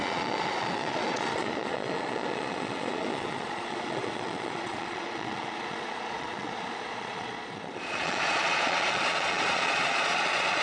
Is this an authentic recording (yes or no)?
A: no